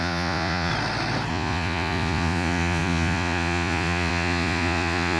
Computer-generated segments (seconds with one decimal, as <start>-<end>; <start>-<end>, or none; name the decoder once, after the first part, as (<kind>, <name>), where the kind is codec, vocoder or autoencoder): 0.0-0.7 (vocoder, Vocos); 1.3-5.2